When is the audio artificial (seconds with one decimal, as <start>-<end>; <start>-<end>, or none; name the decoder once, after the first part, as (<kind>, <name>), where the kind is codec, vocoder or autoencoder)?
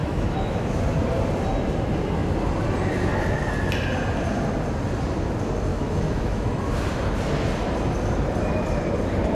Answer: 0.0-0.8 (autoencoder, DAC-VAE); 5.7-6.6